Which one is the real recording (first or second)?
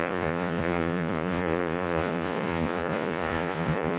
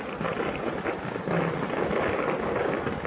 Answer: second